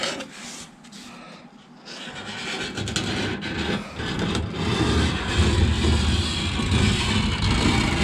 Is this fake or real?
real